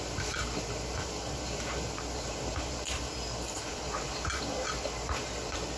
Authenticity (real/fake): fake